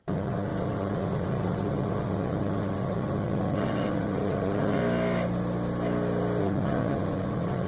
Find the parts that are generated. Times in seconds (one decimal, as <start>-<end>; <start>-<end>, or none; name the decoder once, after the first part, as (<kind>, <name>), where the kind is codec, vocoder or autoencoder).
0.0-4.8 (vocoder, WaveNeXt); 6.4-7.7